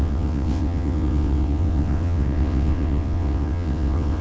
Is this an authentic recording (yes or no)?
no